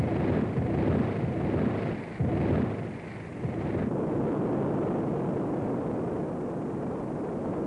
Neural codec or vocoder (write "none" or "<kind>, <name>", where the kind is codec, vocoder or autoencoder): none